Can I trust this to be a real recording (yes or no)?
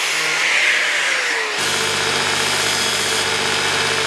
yes